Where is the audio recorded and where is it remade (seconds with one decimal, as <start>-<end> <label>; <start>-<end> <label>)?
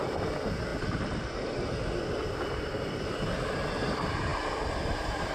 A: 0.0-5.3 recorded